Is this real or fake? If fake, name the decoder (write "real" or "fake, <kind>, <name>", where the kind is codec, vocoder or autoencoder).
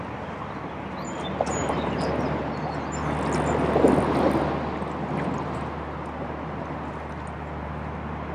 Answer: real